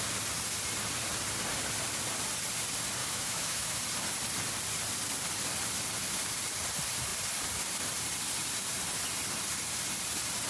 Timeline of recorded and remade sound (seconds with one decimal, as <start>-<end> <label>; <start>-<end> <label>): 0.0-3.0 recorded; 3.0-3.8 remade; 3.8-10.5 recorded